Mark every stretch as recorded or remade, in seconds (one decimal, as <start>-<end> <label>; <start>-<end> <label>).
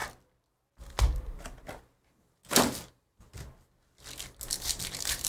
0.0-1.8 recorded; 1.8-2.4 remade; 2.4-2.9 recorded; 2.9-3.3 remade; 3.3-4.7 recorded; 4.7-5.3 remade